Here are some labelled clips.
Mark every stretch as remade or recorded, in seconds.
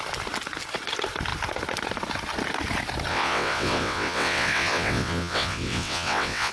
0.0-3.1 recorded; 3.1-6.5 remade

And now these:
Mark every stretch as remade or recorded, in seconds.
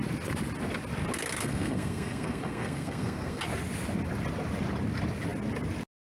0.0-1.4 recorded; 1.4-3.4 remade; 3.4-6.1 recorded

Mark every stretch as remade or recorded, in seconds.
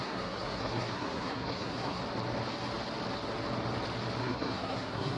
0.0-2.0 remade; 2.0-4.2 recorded; 4.2-5.2 remade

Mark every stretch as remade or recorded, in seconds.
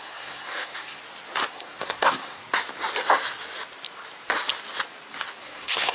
0.0-1.0 remade; 1.0-1.5 recorded; 1.5-2.4 remade; 2.4-5.4 recorded; 5.4-5.9 remade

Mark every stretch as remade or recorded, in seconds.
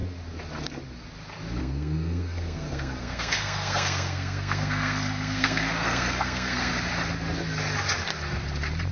0.0-1.6 recorded; 1.6-6.7 remade; 6.7-8.9 recorded